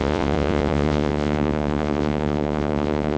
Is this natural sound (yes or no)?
no